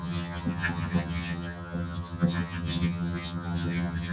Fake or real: fake